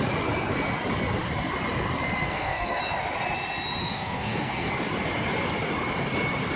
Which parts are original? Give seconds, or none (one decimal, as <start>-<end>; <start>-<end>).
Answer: 0.0-2.2; 2.8-3.8; 4.7-6.6